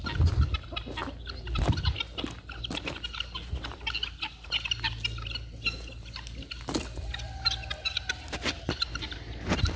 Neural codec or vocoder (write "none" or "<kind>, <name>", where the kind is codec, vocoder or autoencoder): none